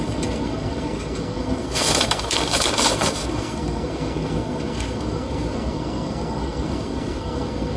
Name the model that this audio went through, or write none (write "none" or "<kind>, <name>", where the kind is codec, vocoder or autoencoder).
codec, SNAC